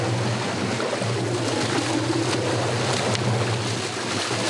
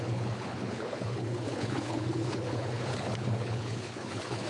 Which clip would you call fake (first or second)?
second